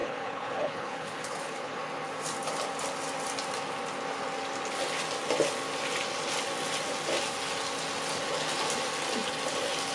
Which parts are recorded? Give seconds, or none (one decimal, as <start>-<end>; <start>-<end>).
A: 1.8-9.9